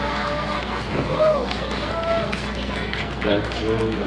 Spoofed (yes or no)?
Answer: yes